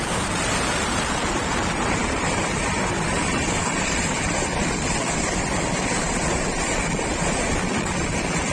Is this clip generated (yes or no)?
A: no